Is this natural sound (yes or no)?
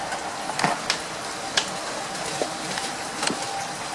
no